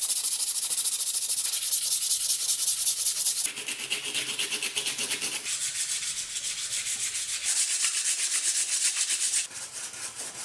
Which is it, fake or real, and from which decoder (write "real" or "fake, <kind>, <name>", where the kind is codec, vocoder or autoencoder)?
real